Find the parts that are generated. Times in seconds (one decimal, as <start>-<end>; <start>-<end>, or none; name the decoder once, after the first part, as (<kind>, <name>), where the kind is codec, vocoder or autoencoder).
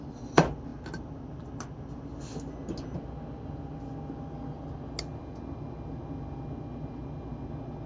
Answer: none